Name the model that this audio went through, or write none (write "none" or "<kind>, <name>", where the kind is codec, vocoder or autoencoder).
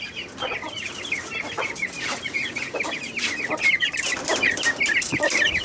vocoder, BigVGAN v2